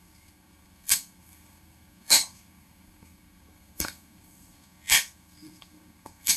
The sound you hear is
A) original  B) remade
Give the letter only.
B